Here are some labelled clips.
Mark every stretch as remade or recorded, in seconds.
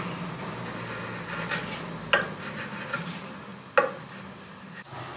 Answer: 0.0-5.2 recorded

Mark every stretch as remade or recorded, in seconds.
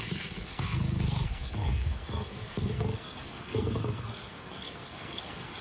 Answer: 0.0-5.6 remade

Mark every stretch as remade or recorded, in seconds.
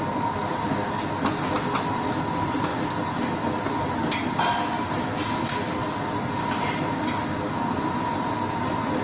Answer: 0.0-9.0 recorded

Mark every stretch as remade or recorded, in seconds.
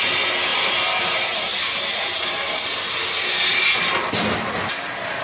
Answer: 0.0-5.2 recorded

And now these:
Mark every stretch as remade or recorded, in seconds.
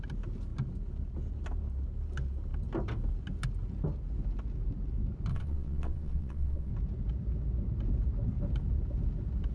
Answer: 0.0-5.3 recorded; 5.3-6.7 remade; 6.7-9.5 recorded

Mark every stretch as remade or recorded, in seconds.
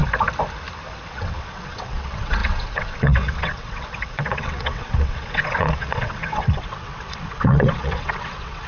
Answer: 0.0-1.1 recorded; 1.1-8.7 remade